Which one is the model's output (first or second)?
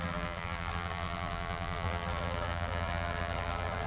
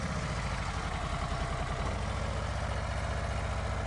first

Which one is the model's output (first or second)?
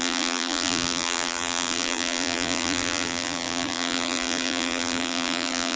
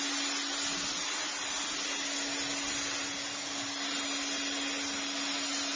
first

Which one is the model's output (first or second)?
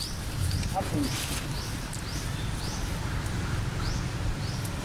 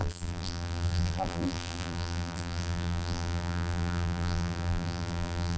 second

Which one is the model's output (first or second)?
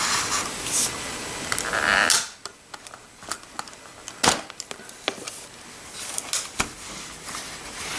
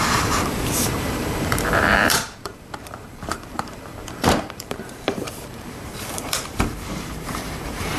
second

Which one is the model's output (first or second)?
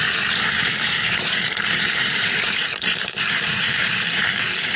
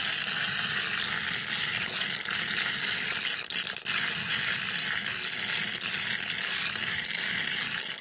first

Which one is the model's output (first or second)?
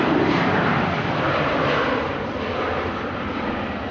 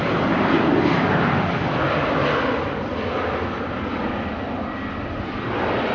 first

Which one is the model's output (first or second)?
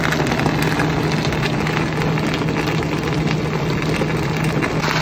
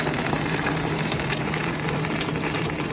second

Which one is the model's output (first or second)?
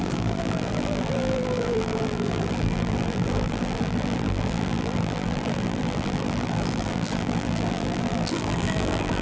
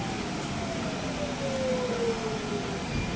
first